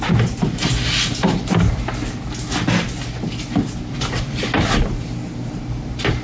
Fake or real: real